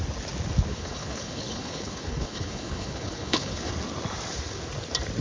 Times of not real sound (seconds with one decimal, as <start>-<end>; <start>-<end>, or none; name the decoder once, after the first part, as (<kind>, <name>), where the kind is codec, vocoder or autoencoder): 0.7-3.7 (codec, HILCodec)